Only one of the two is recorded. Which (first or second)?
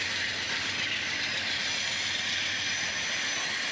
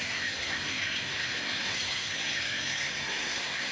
first